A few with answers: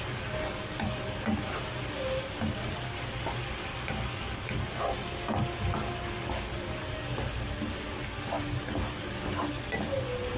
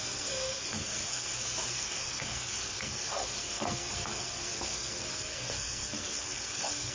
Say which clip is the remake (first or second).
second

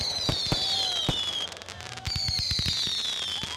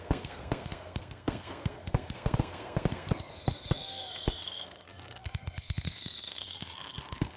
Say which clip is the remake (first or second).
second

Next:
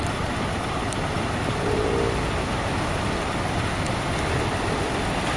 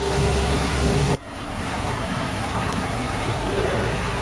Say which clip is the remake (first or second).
second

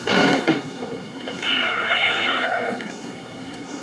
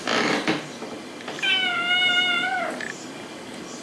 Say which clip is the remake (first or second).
first